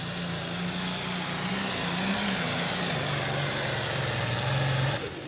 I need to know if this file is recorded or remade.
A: recorded